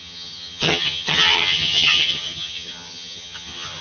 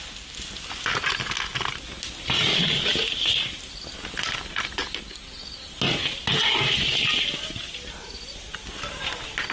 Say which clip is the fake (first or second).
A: first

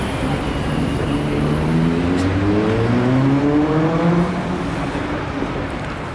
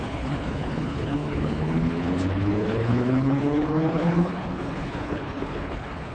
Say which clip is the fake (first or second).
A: second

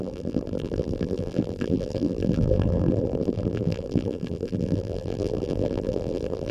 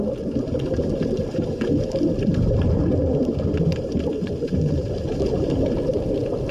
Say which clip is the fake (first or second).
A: first